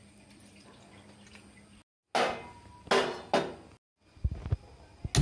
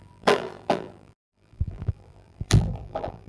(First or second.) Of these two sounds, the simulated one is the second